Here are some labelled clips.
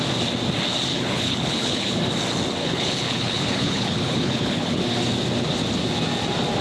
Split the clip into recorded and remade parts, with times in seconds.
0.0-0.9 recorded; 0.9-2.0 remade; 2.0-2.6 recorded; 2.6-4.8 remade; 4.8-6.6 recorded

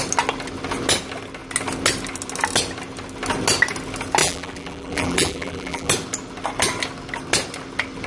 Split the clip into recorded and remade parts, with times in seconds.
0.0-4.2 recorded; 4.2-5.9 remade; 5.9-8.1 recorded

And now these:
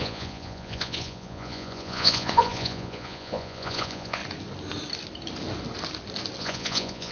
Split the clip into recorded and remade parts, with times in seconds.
0.0-4.2 remade; 4.2-6.4 recorded; 6.4-7.1 remade

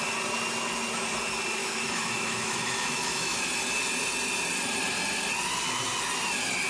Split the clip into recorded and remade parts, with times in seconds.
0.0-1.6 recorded; 1.6-3.4 remade; 3.4-6.7 recorded

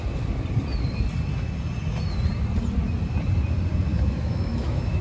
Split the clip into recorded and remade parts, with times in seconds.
0.0-3.9 recorded; 3.9-5.0 remade

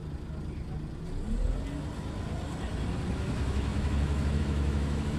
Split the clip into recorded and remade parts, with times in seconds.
0.0-3.1 recorded; 3.1-5.2 remade

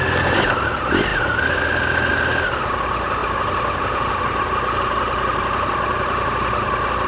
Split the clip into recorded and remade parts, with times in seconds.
0.0-7.1 recorded

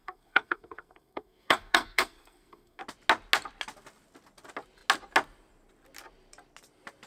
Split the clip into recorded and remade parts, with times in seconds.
0.0-2.8 remade; 2.8-7.1 recorded